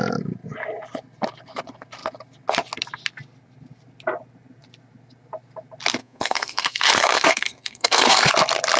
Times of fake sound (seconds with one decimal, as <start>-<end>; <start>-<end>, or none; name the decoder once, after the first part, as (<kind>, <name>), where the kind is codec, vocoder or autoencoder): 6.0-8.3 (codec, SNAC)